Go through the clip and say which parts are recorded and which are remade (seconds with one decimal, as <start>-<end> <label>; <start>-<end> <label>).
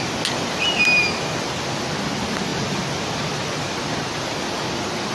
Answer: 0.0-5.1 recorded